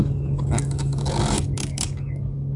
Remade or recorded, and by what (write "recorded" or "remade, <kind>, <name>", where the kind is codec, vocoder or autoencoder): remade, codec, DAC